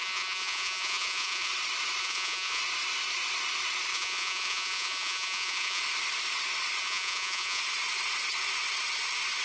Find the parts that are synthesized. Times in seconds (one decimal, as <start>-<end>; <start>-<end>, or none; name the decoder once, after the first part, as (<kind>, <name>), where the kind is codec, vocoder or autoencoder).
0.0-1.5 (vocoder, Vocos); 2.0-2.6; 3.9-5.8; 6.8-7.6

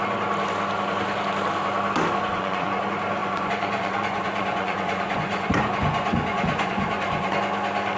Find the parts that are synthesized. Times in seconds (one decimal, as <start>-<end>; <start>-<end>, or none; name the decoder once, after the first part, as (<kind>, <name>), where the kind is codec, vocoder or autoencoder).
2.3-2.8 (vocoder, Vocos); 3.2-7.3

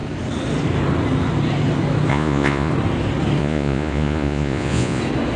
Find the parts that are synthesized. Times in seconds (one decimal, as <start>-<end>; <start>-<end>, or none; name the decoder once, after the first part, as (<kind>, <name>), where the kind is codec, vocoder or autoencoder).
2.1-2.7 (vocoder, Vocos); 3.4-5.0

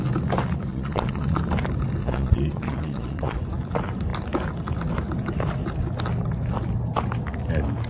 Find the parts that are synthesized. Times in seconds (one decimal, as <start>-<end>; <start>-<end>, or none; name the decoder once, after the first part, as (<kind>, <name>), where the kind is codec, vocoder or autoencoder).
0.7-1.4 (vocoder, Vocos); 2.0-3.4

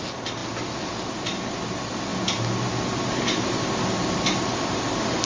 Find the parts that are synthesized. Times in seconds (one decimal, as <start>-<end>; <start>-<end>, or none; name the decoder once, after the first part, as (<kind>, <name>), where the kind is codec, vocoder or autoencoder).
none

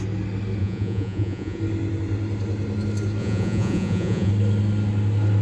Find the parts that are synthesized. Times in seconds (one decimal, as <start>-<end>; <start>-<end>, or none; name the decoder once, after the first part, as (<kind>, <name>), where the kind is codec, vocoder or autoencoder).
0.6-1.6 (vocoder, Vocos); 3.2-4.3

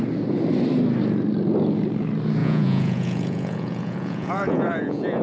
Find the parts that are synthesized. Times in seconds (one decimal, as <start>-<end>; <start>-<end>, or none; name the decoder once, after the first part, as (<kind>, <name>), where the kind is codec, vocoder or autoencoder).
2.4-5.2 (vocoder, Vocos)

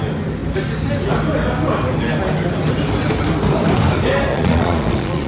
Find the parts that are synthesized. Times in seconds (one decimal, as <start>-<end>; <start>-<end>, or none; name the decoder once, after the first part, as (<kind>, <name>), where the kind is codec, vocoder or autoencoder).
4.3-5.3 (vocoder, Vocos)